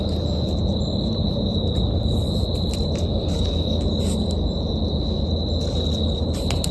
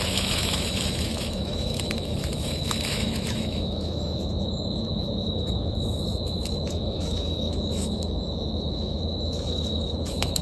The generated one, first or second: second